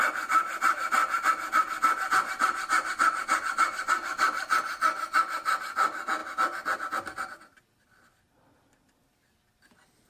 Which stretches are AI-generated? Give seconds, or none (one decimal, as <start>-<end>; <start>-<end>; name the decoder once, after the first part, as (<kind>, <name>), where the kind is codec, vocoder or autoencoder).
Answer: none